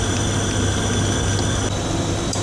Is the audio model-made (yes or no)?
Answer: no